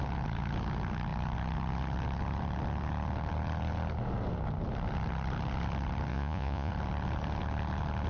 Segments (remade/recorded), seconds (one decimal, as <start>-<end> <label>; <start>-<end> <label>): 0.0-6.1 recorded; 6.1-6.7 remade; 6.7-8.1 recorded

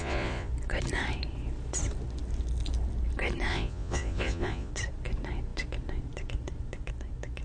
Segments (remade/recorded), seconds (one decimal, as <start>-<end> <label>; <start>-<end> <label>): 0.0-0.5 remade; 0.5-3.5 recorded; 3.5-4.7 remade; 4.7-7.4 recorded